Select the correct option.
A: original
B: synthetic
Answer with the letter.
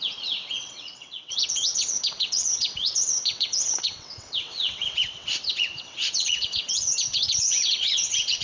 B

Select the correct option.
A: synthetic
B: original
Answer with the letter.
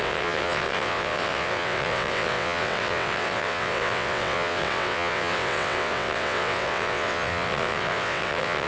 A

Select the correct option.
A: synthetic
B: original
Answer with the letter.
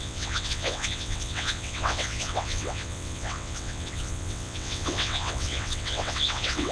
A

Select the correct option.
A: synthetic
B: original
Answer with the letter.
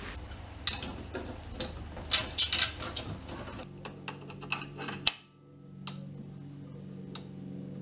B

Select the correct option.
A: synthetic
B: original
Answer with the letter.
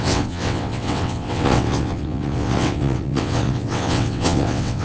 A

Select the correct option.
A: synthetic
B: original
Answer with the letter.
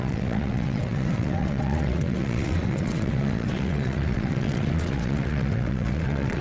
A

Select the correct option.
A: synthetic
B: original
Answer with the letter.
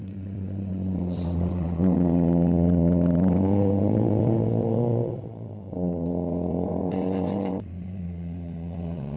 A